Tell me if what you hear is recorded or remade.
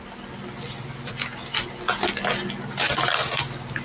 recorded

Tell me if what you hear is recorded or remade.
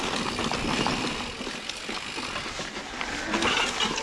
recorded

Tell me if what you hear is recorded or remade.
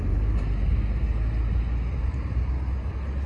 recorded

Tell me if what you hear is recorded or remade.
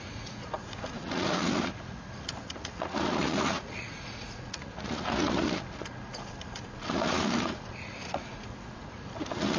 remade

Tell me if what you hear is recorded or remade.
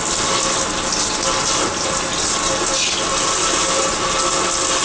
recorded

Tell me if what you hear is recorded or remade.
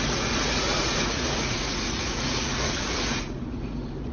remade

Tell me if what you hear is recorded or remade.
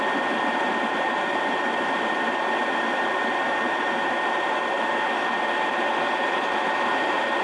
recorded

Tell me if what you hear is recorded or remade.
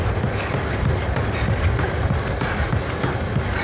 recorded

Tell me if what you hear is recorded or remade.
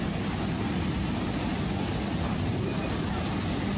recorded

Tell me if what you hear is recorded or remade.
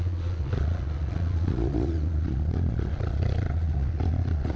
remade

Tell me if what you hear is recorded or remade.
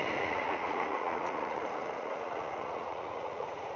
remade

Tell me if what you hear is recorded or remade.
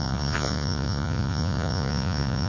remade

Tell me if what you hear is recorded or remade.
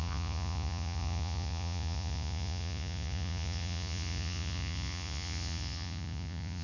remade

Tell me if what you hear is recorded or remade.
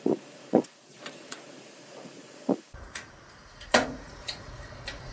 remade